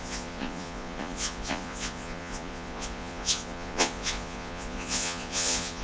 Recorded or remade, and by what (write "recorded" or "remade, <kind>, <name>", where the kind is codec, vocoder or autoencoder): remade, vocoder, Vocos